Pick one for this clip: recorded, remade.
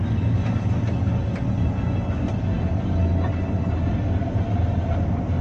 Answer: recorded